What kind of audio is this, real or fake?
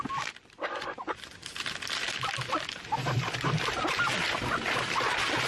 real